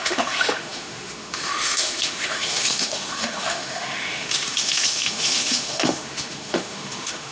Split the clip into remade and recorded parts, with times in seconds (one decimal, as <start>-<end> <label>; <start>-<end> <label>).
0.0-7.3 remade